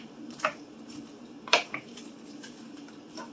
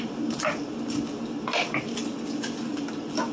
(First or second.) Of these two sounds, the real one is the second